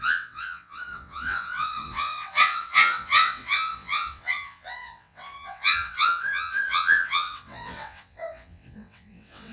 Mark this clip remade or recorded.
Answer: remade